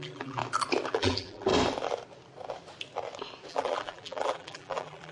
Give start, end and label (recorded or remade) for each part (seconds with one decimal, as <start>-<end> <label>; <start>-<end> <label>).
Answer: 0.0-0.4 remade; 0.4-0.9 recorded; 0.9-1.5 remade; 1.5-3.5 recorded; 3.5-5.1 remade